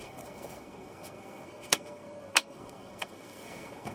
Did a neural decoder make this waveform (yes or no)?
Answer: yes